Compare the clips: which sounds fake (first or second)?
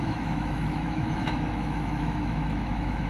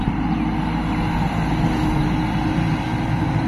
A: first